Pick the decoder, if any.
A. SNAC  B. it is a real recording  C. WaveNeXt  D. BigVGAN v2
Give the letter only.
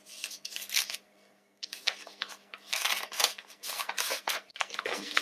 A